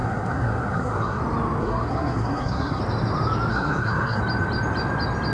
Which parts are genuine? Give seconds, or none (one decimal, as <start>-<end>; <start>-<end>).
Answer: 1.2-1.6; 2.8-3.5; 4.2-5.3